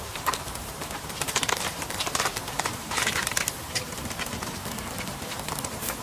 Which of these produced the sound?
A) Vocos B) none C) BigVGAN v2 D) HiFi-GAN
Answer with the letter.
C